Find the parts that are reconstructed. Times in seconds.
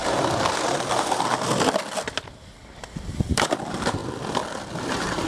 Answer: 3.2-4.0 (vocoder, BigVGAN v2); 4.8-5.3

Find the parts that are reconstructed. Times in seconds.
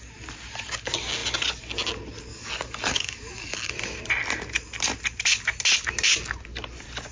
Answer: 2.3-3.7 (codec, DAC)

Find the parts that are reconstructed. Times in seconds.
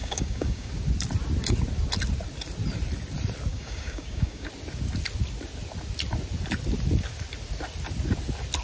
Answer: 0.0-0.7 (codec, DAC); 3.5-4.5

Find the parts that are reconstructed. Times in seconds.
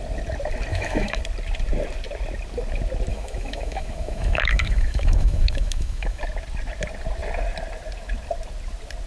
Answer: 0.7-1.2 (autoencoder, DAC-VAE); 3.1-6.2